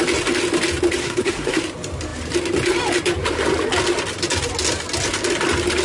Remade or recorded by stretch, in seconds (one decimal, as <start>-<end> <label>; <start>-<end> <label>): 0.0-1.0 recorded; 1.0-1.6 remade; 1.6-5.8 recorded